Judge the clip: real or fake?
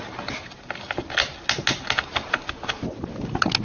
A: real